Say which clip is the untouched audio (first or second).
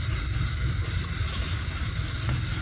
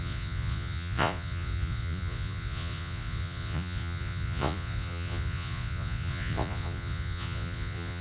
first